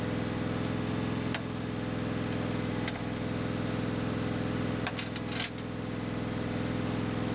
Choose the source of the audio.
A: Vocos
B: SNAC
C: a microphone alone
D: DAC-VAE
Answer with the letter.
C